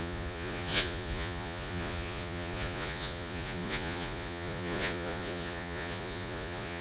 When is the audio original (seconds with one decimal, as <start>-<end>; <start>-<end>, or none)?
none